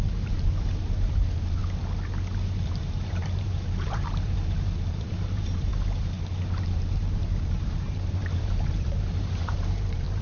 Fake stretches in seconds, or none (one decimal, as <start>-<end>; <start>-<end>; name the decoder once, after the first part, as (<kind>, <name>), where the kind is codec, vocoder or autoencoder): 0.0-1.6 (vocoder, BigVGAN v2); 2.8-5.7; 6.6-10.2